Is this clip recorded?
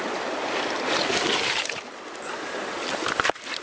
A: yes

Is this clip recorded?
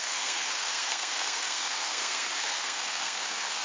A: no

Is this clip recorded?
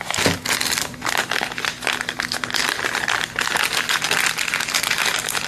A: yes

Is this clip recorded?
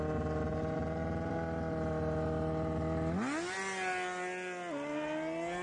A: yes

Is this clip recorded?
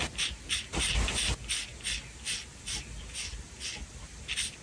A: yes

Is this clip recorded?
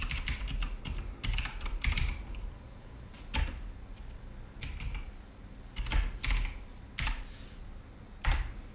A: yes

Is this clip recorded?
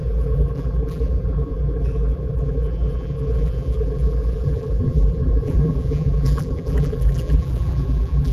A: no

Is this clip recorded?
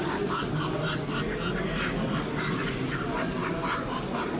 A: yes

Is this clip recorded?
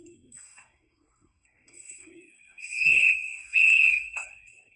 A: no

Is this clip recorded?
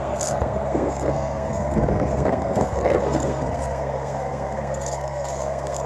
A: no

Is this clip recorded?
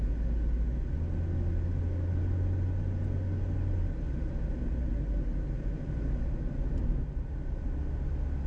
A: yes